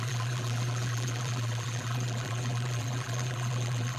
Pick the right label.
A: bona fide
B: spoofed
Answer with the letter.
B